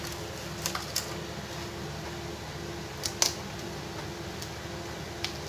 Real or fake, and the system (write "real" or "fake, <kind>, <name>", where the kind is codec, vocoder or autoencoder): real